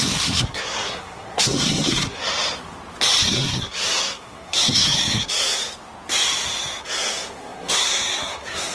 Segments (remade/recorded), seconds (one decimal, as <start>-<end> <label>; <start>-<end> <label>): 0.0-2.2 remade; 2.2-3.2 recorded; 3.2-5.6 remade; 5.6-6.8 recorded; 6.8-8.7 remade